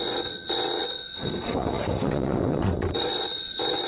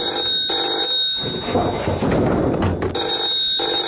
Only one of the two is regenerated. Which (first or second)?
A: first